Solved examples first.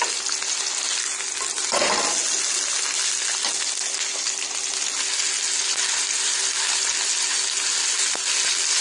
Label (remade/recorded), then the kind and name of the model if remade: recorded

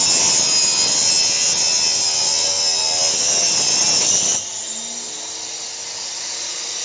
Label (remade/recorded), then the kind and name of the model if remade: recorded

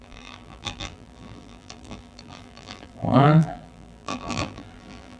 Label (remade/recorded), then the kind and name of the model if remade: remade, vocoder, BigVGAN v2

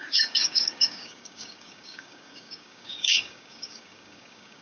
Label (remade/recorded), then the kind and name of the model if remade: remade, codec, DAC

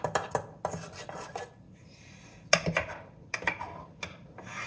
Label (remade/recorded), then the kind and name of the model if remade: recorded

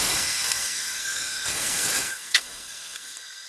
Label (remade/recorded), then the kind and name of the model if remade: remade, codec, SNAC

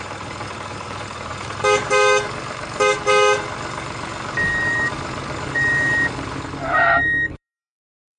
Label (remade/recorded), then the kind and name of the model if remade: remade, codec, DAC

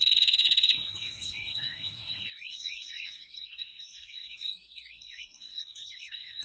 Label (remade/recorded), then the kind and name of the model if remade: remade, codec, SNAC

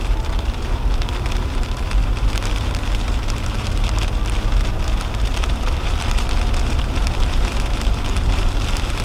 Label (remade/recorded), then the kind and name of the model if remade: remade, vocoder, BigVGAN v2